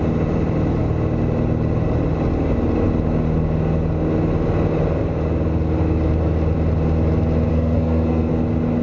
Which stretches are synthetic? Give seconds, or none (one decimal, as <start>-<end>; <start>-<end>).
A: 7.5-8.3